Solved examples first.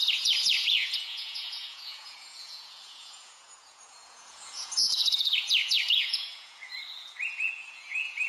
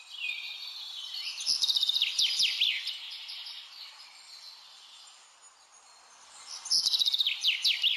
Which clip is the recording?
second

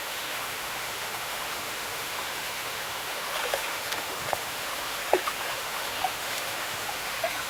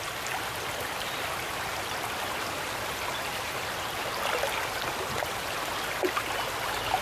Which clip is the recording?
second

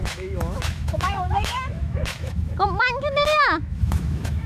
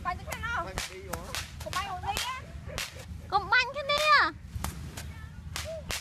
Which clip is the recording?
second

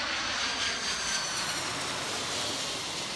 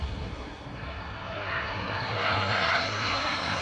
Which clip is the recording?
first